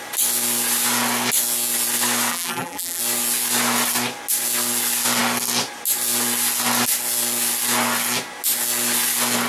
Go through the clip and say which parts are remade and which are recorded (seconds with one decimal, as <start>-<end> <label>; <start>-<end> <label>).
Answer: 0.0-2.3 recorded; 2.3-3.0 remade; 3.0-9.5 recorded